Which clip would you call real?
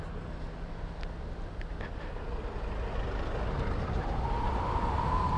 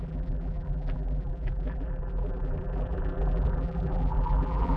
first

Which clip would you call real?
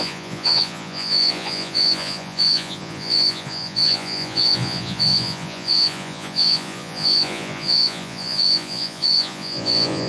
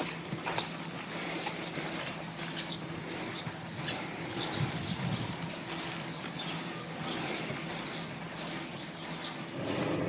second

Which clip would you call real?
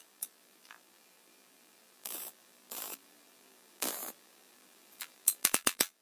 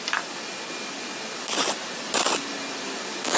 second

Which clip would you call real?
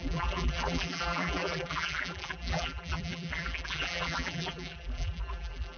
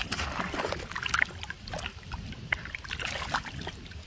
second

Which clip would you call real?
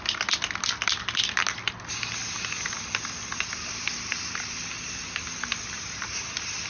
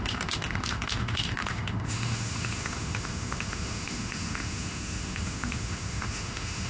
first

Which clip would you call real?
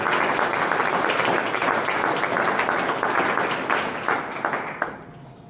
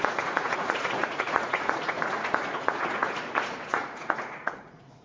first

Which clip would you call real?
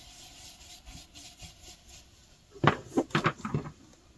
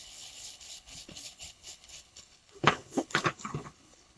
first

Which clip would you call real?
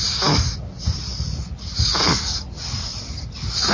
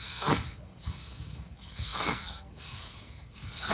first